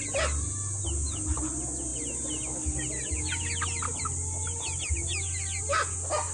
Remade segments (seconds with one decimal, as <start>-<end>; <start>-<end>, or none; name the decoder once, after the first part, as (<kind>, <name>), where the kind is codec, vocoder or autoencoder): none